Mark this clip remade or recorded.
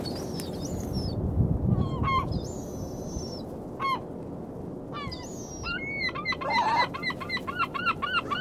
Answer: recorded